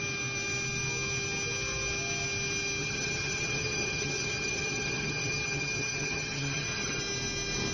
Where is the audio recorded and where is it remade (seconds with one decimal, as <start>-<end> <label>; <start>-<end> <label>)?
0.0-2.8 recorded; 2.8-7.0 remade; 7.0-7.7 recorded

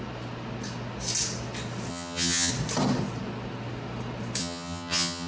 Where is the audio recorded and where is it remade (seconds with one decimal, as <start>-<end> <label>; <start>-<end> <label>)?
0.0-1.9 recorded; 1.9-2.5 remade; 2.5-4.4 recorded; 4.4-5.3 remade

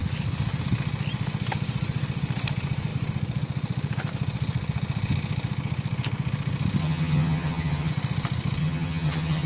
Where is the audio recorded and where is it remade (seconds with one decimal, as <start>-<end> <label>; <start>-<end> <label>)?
0.0-6.8 recorded; 6.8-7.9 remade; 7.9-8.6 recorded; 8.6-9.5 remade